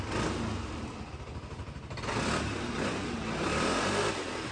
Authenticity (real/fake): real